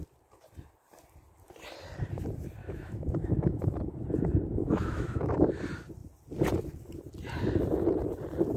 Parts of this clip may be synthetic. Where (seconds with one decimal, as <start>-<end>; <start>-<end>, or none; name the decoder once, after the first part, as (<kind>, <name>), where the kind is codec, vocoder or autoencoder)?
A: 2.6-3.8 (autoencoder, DAC-VAE); 4.6-5.6